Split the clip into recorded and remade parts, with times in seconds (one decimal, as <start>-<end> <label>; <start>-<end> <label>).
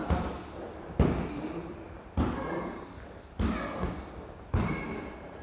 0.0-5.4 remade